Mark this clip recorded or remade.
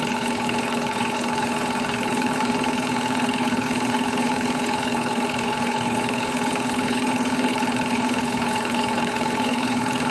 remade